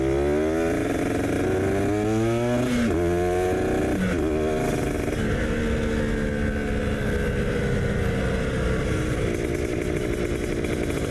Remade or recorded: recorded